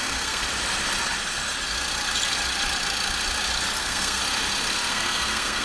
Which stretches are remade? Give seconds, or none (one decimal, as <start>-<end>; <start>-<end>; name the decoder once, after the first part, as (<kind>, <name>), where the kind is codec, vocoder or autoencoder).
0.0-0.4 (codec, SNAC); 3.8-4.2; 4.9-5.6